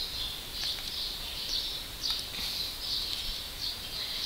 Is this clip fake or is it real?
real